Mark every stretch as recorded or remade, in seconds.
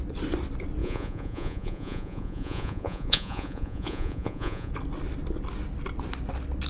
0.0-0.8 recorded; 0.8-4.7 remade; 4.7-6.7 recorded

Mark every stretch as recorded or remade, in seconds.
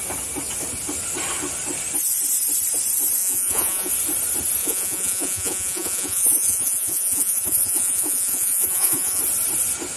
0.0-3.2 recorded; 3.2-3.9 remade; 3.9-4.6 recorded; 4.6-9.2 remade; 9.2-10.0 recorded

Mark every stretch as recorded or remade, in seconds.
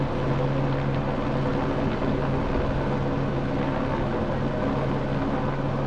0.0-5.9 recorded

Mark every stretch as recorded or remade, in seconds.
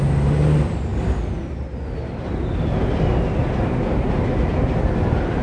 0.0-5.4 recorded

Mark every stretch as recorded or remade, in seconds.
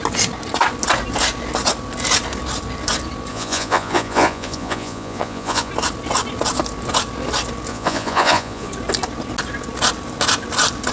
0.0-3.3 recorded; 3.3-5.7 remade; 5.7-7.7 recorded; 7.7-8.7 remade; 8.7-10.9 recorded